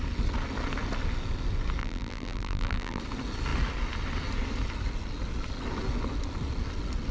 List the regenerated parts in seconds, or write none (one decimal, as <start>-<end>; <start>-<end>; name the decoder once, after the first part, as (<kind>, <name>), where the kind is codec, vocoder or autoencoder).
1.8-3.0 (vocoder, BigVGAN v2)